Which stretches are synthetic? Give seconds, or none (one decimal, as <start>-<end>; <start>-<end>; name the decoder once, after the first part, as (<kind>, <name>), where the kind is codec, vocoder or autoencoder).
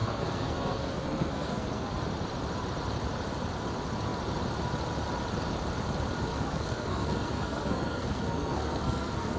0.0-1.9 (codec, SNAC); 6.3-9.4